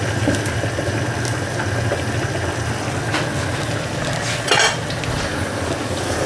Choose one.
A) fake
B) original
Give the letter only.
B